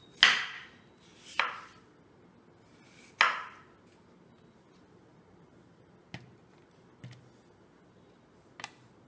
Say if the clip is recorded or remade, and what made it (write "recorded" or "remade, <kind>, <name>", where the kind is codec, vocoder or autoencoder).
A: recorded